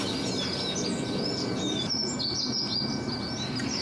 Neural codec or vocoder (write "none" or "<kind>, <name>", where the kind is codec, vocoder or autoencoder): none